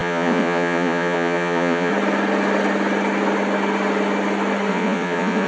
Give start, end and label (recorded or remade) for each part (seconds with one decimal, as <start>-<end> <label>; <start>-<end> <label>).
0.0-1.9 remade; 1.9-4.7 recorded; 4.7-5.5 remade